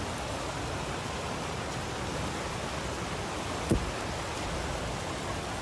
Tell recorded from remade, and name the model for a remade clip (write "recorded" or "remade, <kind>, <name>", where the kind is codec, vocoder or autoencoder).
recorded